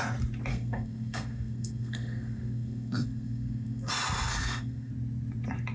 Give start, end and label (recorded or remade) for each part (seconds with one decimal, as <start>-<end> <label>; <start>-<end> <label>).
0.0-0.5 recorded; 0.5-3.9 remade; 3.9-4.3 recorded; 4.3-4.9 remade; 4.9-5.7 recorded